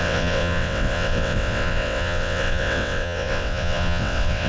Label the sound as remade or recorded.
remade